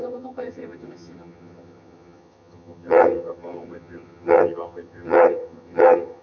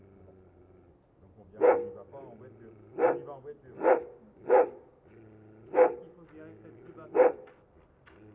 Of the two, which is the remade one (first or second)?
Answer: first